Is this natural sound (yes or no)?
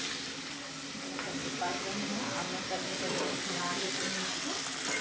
yes